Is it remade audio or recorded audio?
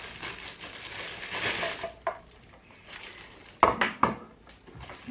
recorded